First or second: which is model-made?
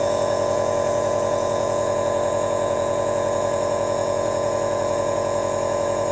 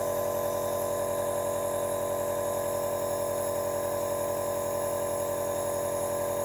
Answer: first